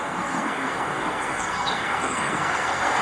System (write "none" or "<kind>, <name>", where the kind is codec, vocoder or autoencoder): codec, SNAC